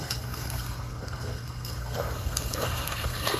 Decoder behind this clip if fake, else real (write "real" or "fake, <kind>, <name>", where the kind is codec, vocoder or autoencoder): fake, codec, SNAC